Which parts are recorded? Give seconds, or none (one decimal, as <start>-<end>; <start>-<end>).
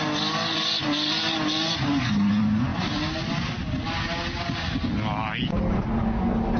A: 0.0-6.6